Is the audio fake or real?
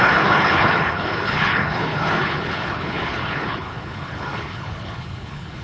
fake